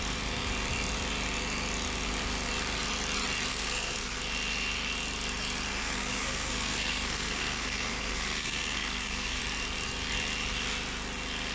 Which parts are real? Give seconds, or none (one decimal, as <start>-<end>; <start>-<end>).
0.0-3.5; 4.2-5.7; 9.4-11.5